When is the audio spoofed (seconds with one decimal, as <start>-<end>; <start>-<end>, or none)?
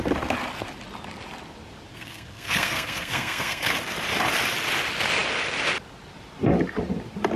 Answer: 1.9-3.7